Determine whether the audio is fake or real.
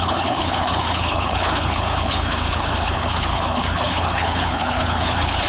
fake